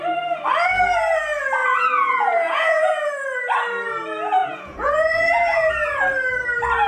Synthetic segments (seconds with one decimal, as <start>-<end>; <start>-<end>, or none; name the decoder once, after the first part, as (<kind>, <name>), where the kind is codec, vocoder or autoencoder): 1.6-3.1 (vocoder, Vocos); 4.4-5.7